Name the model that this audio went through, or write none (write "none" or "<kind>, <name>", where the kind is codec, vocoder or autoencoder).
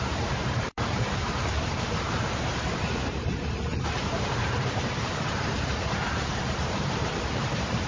vocoder, BigVGAN v2